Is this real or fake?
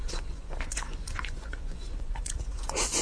fake